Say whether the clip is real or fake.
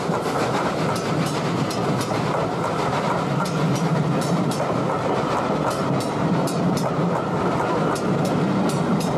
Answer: real